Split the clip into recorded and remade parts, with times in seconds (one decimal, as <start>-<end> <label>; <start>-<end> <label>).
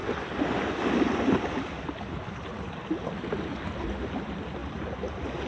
0.0-5.5 recorded